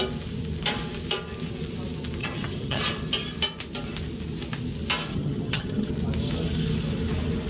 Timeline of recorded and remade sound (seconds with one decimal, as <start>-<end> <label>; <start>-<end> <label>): 0.0-2.2 recorded; 2.2-2.8 remade; 2.8-5.1 recorded; 5.1-5.9 remade; 5.9-7.5 recorded